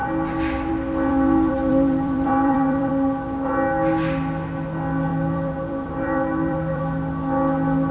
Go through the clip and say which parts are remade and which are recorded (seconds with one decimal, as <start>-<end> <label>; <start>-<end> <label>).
0.0-1.1 recorded; 1.1-2.9 remade; 2.9-5.1 recorded; 5.1-6.8 remade; 6.8-7.9 recorded